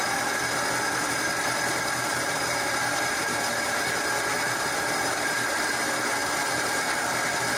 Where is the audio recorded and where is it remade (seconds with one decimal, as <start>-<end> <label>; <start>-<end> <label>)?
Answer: 0.0-2.1 recorded; 2.1-5.6 remade; 5.6-6.2 recorded; 6.2-7.6 remade